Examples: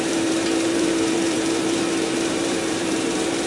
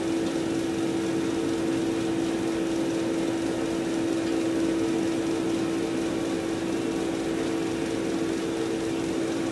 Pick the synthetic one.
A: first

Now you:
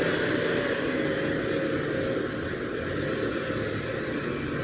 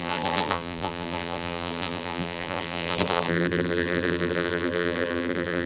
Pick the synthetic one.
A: second